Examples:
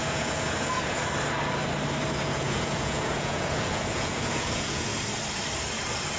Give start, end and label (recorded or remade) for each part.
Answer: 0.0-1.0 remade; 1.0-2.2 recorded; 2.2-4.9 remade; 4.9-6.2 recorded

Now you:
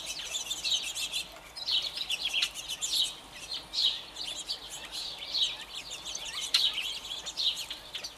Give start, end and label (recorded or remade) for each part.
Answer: 0.0-8.2 recorded

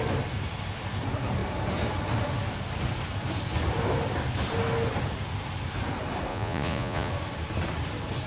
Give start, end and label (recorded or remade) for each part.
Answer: 0.0-6.3 recorded; 6.3-7.1 remade; 7.1-8.3 recorded

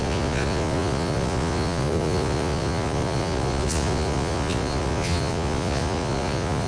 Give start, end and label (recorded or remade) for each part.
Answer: 0.0-6.7 remade

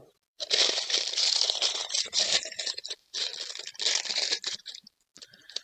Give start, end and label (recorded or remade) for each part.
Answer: 0.0-3.3 remade; 3.3-4.1 recorded; 4.1-5.6 remade

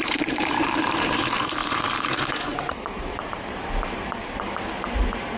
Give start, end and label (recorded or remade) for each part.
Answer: 0.0-5.4 remade

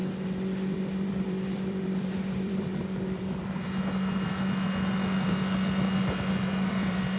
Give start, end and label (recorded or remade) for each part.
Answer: 0.0-0.8 recorded; 0.8-2.7 remade; 2.7-6.7 recorded; 6.7-7.2 remade

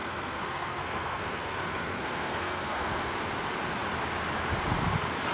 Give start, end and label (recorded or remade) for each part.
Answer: 0.0-3.2 remade; 3.2-5.3 recorded